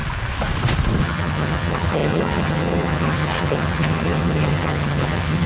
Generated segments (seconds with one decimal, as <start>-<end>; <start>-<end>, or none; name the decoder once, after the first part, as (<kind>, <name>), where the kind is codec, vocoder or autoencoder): 1.0-5.5 (vocoder, HiFi-GAN)